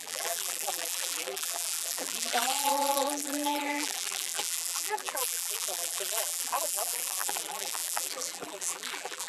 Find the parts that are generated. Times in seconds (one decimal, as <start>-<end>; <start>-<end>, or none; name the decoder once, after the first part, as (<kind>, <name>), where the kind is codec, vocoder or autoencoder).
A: 0.0-9.3 (vocoder, BigVGAN v2)